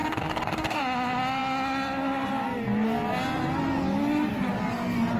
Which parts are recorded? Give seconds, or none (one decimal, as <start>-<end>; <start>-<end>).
0.8-5.2